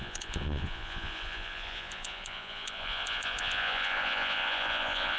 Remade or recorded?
remade